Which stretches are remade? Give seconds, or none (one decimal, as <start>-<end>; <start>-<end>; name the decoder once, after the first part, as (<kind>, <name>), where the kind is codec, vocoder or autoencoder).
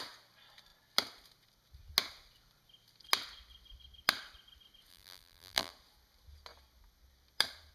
4.9-5.7 (vocoder, BigVGAN v2)